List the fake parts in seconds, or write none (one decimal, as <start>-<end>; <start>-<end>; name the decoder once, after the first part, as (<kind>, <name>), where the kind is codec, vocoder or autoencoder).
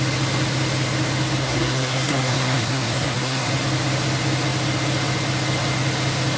1.4-3.5 (codec, SNAC)